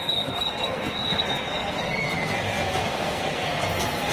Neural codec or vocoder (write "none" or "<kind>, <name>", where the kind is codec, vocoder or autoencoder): codec, SNAC